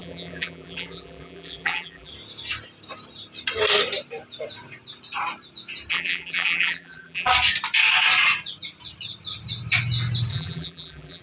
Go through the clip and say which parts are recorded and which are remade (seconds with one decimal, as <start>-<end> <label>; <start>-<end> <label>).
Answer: 0.0-2.1 remade; 2.1-5.9 recorded; 5.9-7.3 remade; 7.3-10.3 recorded; 10.3-11.2 remade